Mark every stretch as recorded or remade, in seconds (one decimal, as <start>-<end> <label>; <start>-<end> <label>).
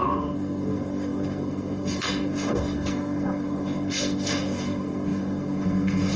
0.0-6.2 remade